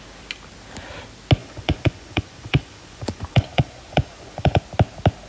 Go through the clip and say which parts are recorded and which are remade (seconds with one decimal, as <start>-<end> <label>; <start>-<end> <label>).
0.0-1.4 recorded; 1.4-4.6 remade; 4.6-5.3 recorded